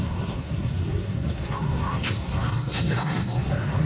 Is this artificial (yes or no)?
yes